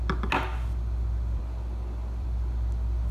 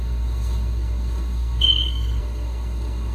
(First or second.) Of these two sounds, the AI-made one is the second